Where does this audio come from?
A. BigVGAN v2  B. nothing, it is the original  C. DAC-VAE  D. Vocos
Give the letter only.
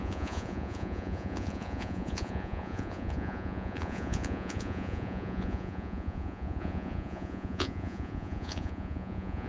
D